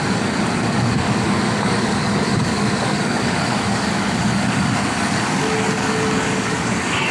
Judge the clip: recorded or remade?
remade